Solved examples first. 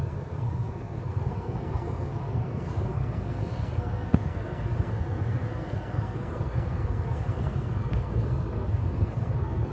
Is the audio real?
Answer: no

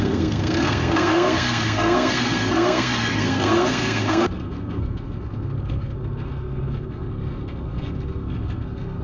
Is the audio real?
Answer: no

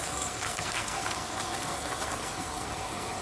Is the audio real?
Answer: no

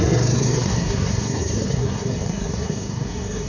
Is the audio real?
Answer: no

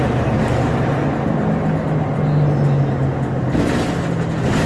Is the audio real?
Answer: yes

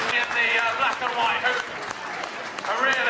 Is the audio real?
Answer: yes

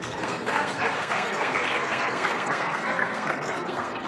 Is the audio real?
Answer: no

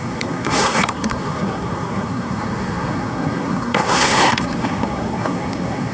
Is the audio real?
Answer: no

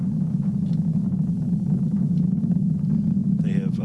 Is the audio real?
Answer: yes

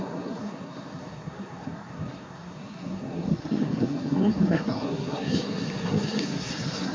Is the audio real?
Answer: no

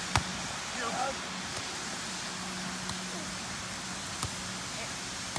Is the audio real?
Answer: yes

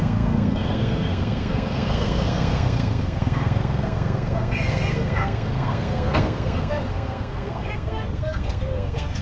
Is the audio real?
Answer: no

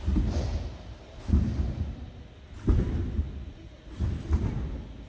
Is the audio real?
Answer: yes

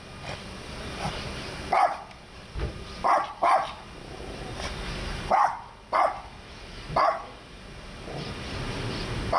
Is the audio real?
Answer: yes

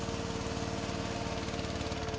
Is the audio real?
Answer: yes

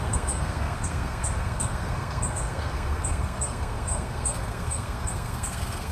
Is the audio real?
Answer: no